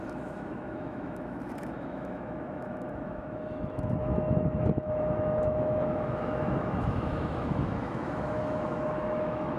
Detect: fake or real fake